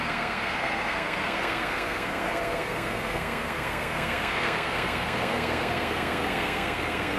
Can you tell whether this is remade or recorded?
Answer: remade